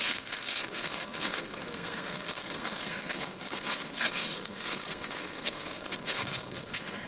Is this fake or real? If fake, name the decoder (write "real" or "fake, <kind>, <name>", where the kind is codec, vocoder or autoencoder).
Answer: fake, codec, SNAC